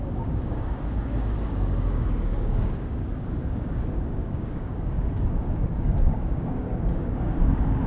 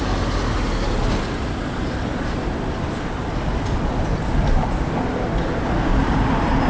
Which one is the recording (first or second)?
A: second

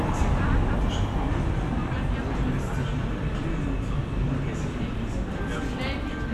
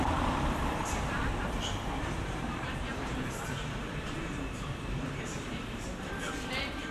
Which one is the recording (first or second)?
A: first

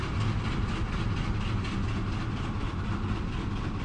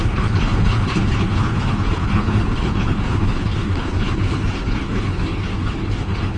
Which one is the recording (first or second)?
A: first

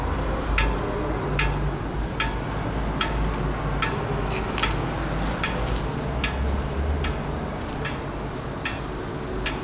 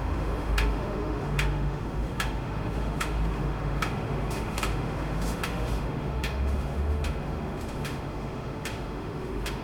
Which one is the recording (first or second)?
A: first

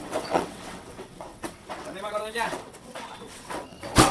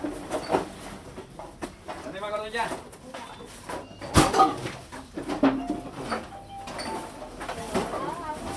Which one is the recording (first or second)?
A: second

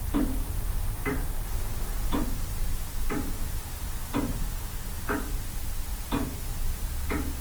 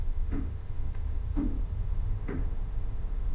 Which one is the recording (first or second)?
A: first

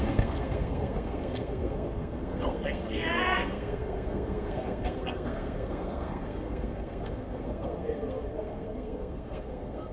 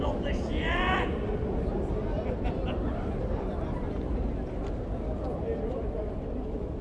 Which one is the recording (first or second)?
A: second